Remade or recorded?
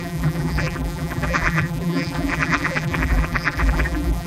remade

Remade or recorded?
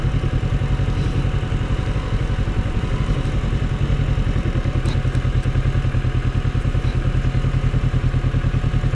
recorded